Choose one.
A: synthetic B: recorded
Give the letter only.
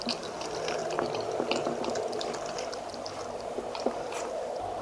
B